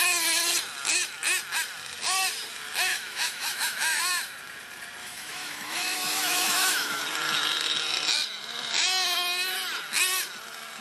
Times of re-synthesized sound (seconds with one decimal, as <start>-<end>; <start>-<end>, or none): 2.9-4.0; 5.0-7.0